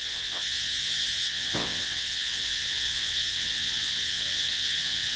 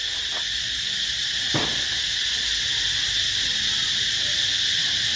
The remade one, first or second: first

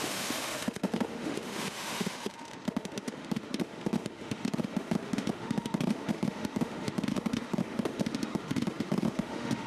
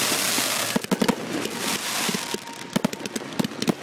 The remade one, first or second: first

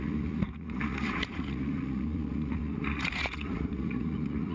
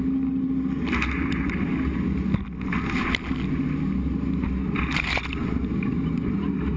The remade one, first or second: first